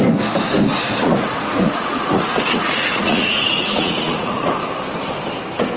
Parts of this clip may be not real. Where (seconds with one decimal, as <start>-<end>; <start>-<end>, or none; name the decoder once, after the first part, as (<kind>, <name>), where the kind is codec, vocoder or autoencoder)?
1.0-4.5 (vocoder, Vocos)